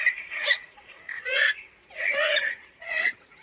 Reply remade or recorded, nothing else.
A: remade